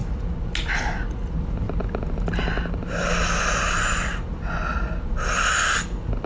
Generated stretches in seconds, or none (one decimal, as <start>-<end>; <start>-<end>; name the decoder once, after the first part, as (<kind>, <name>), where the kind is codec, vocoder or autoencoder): none

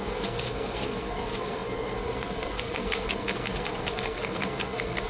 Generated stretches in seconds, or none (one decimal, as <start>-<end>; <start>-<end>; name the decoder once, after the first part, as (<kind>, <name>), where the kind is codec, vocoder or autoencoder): 0.0-5.1 (codec, SNAC)